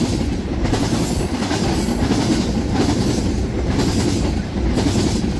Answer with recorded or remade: recorded